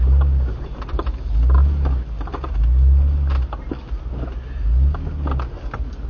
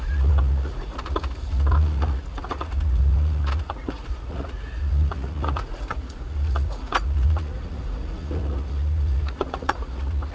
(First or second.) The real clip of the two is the first